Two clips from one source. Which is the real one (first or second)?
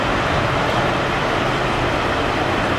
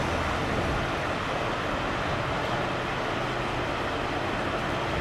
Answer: second